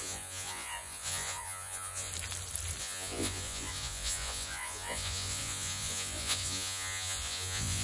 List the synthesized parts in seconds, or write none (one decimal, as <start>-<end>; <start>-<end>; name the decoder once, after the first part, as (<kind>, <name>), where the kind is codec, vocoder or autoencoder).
0.0-2.1 (vocoder, Vocos); 2.8-7.8